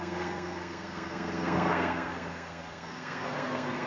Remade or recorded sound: remade